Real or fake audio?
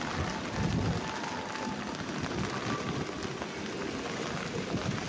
real